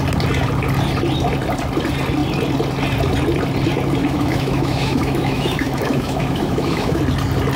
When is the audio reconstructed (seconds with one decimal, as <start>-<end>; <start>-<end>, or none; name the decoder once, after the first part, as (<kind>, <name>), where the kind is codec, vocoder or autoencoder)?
4.0-7.0 (autoencoder, DAC-VAE)